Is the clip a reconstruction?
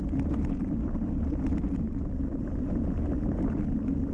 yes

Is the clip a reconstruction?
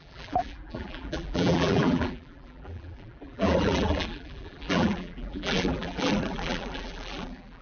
yes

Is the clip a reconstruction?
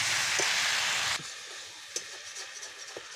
no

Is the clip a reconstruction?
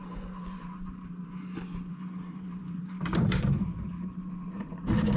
yes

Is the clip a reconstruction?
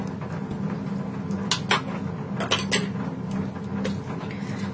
no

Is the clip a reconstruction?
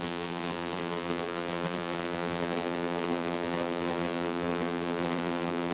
yes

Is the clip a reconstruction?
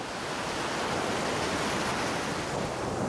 no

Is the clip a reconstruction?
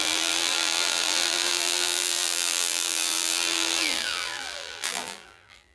yes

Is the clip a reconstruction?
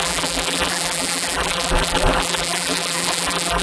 yes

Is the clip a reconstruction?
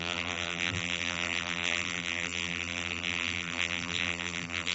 yes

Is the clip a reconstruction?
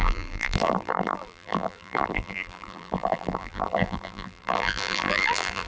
yes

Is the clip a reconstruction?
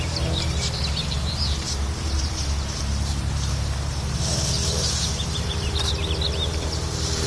yes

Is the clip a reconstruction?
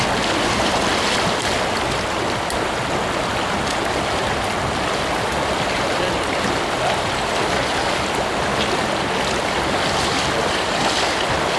no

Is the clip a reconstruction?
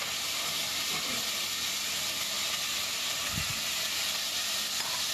no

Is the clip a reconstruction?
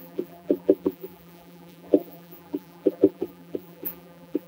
yes